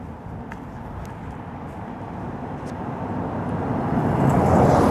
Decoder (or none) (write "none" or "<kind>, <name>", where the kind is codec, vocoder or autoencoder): none